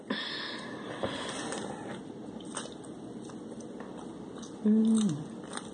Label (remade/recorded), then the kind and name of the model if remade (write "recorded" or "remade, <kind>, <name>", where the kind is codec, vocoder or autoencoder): recorded